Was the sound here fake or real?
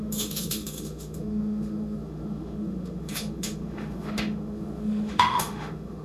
fake